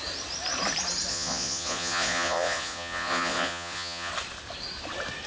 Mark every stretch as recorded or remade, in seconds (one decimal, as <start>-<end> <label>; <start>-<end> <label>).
0.0-1.1 recorded; 1.1-4.1 remade; 4.1-5.3 recorded